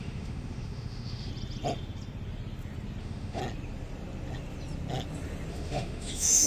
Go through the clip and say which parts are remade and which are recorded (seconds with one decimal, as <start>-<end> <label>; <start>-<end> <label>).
0.0-1.3 remade; 1.3-3.0 recorded; 3.0-3.4 remade; 3.4-5.5 recorded; 5.5-6.5 remade